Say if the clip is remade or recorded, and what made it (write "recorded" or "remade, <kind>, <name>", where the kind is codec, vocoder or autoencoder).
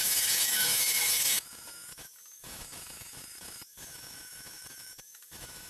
remade, autoencoder, DAC-VAE